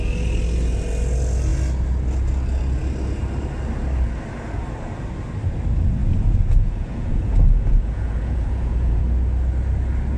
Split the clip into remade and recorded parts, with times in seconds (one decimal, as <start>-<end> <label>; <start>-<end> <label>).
0.0-6.0 recorded; 6.0-9.0 remade; 9.0-10.2 recorded